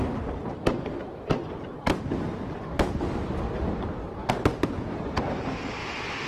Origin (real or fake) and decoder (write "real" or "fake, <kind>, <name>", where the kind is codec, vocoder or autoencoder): real